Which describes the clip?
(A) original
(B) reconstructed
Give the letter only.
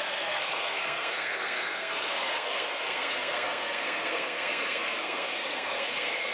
B